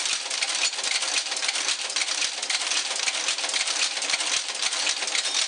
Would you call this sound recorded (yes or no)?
yes